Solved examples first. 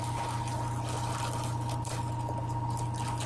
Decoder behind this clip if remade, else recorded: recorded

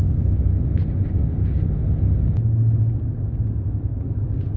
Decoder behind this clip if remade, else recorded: recorded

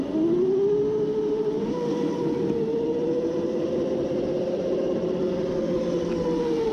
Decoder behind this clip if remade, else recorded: recorded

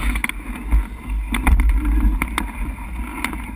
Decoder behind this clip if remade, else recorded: recorded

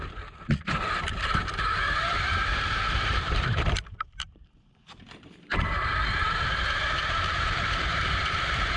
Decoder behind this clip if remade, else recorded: remade, vocoder, BigVGAN v2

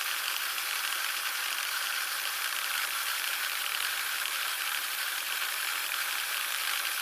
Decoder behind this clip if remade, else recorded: remade, vocoder, BigVGAN v2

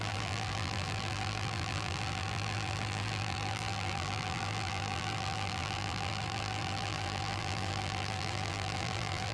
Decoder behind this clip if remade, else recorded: remade, vocoder, BigVGAN v2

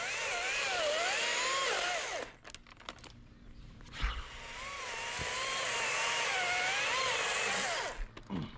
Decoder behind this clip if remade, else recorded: recorded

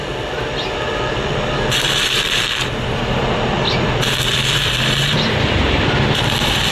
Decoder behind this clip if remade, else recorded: remade, vocoder, BigVGAN v2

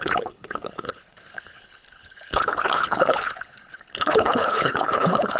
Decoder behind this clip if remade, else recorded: remade, codec, HILCodec